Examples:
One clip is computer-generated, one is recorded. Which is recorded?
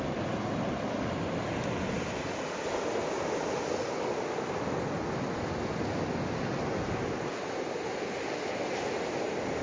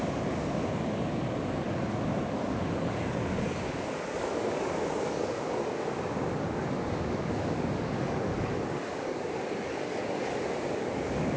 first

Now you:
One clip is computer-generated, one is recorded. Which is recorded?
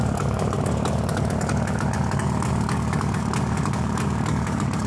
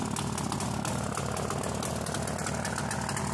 second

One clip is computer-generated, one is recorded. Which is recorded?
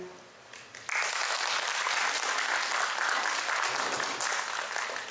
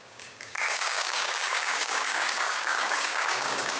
first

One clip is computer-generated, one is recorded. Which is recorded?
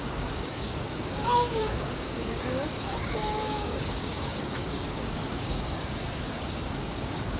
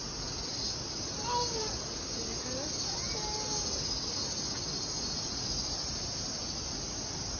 second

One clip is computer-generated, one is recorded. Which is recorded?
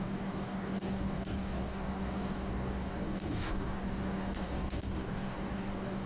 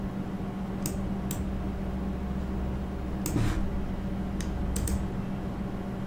second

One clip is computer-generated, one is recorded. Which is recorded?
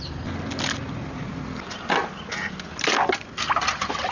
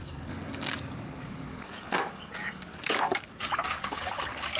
first